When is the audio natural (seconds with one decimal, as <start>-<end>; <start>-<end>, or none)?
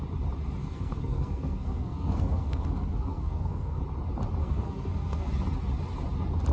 0.0-0.6; 3.8-4.4; 5.3-6.5